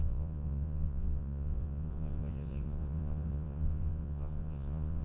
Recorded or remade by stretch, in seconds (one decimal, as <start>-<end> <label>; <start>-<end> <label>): 0.0-5.0 remade